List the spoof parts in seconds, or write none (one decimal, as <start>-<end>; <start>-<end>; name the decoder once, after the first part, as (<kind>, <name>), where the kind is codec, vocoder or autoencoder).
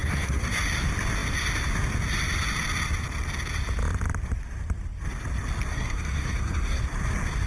0.0-0.6 (codec, SNAC); 5.7-6.8